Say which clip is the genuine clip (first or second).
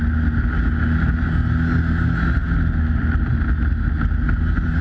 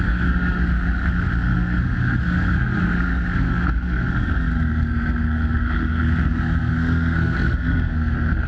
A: first